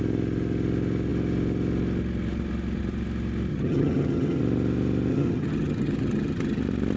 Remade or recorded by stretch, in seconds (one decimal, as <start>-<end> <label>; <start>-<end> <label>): 0.0-3.5 recorded; 3.5-4.4 remade; 4.4-5.1 recorded; 5.1-6.6 remade; 6.6-7.0 recorded